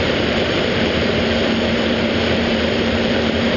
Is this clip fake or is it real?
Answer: fake